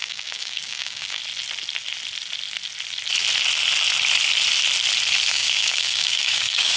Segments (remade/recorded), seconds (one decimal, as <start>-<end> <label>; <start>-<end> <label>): 0.0-1.2 remade; 1.2-5.3 recorded; 5.3-6.8 remade